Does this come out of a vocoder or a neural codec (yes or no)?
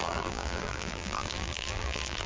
yes